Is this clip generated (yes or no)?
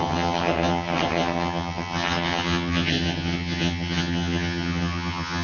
yes